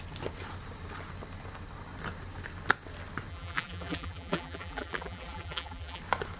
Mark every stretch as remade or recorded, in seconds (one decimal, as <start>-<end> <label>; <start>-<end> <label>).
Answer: 0.0-3.3 recorded; 3.3-6.0 remade; 6.0-6.4 recorded